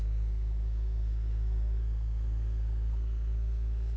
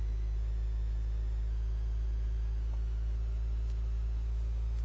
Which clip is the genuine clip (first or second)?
second